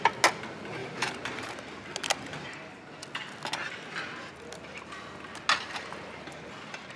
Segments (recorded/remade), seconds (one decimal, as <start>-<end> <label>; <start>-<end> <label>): 0.0-0.8 recorded; 0.8-1.5 remade; 1.5-2.3 recorded; 2.3-2.8 remade; 2.8-7.0 recorded